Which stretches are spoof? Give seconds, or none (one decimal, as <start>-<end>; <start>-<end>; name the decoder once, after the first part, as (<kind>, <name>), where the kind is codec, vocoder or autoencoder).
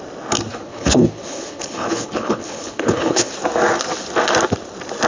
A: 0.5-3.3 (codec, HILCodec)